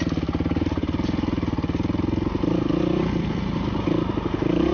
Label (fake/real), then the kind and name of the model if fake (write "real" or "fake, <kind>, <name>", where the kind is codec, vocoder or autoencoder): real